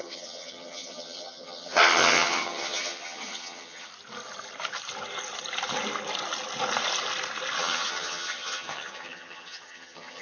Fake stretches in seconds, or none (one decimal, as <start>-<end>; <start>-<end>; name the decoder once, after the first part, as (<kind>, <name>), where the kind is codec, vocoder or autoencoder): 0.0-3.9 (vocoder, HiFi-GAN); 7.6-10.2